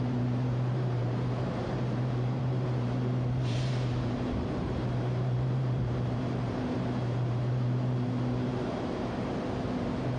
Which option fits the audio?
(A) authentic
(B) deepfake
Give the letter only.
B